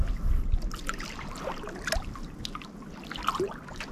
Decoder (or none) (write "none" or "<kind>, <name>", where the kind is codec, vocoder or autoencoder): none